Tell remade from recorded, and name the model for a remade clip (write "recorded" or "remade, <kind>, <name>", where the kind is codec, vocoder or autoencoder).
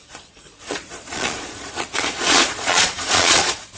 remade, vocoder, Vocos